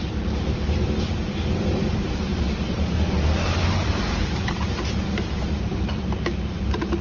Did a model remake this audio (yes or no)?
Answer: yes